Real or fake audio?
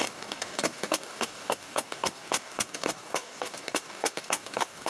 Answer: fake